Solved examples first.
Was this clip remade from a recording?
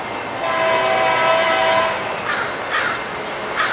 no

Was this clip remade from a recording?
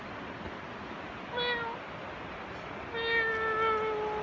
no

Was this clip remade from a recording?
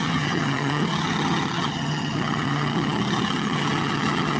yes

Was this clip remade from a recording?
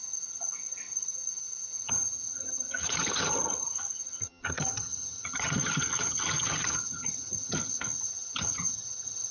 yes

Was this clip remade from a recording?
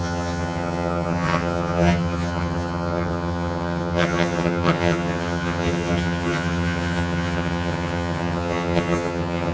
yes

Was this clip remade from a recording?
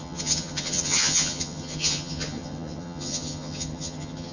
yes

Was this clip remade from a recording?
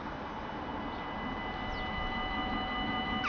no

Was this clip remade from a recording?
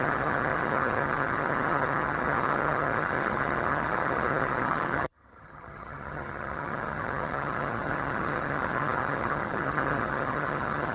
yes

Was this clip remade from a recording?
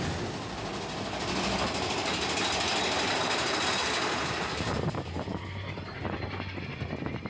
no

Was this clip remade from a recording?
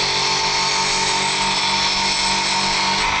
no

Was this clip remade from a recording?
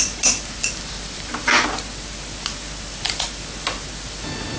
no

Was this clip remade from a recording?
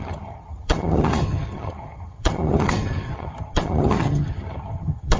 yes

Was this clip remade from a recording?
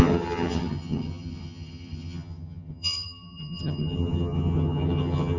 yes